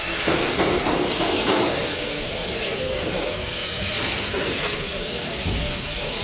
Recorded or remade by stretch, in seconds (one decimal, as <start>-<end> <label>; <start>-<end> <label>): 0.0-6.2 remade